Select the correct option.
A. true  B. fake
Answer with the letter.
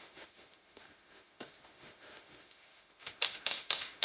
B